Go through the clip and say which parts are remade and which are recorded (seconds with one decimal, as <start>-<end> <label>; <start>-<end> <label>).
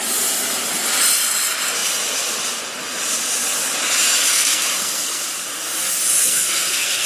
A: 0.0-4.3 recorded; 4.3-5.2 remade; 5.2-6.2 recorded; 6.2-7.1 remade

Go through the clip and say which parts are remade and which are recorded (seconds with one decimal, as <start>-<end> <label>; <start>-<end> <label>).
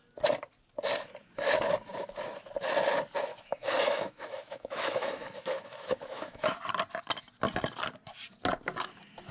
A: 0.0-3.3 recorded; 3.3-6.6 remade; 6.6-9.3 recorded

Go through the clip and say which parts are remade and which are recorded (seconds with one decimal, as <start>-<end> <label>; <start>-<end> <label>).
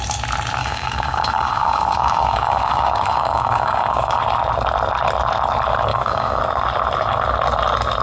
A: 0.0-0.6 recorded; 0.6-4.2 remade; 4.2-5.9 recorded; 5.9-6.4 remade; 6.4-8.0 recorded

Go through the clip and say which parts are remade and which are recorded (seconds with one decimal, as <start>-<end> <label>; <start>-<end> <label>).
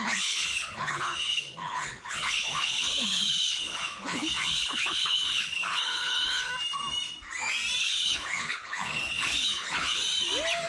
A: 0.0-6.5 remade; 6.5-7.8 recorded; 7.8-10.0 remade; 10.0-10.7 recorded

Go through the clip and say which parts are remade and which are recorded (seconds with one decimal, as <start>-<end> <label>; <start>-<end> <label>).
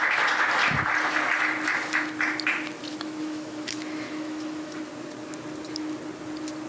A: 0.0-2.9 recorded; 2.9-4.8 remade; 4.8-6.7 recorded